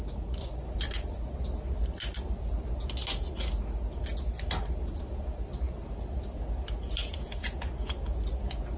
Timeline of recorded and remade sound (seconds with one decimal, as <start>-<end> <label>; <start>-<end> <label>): 0.0-7.0 recorded; 7.0-8.0 remade; 8.0-8.8 recorded